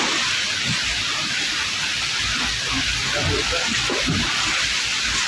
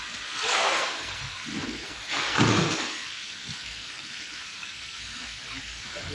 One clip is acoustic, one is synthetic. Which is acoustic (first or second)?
first